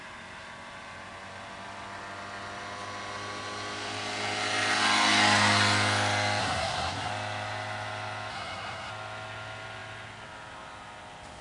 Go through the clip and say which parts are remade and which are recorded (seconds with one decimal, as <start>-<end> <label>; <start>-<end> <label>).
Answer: 0.0-6.4 recorded; 6.4-7.1 remade; 7.1-8.3 recorded; 8.3-8.9 remade; 8.9-11.4 recorded